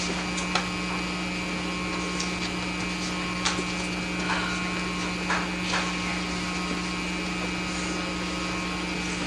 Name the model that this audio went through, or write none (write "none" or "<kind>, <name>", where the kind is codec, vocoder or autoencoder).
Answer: none